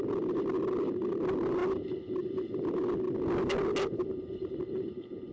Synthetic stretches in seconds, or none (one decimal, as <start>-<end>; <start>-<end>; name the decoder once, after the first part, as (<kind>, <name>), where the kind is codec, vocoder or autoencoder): 4.0-5.3 (vocoder, BigVGAN v2)